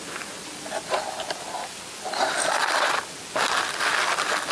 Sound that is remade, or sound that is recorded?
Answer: recorded